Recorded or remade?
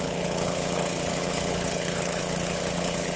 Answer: remade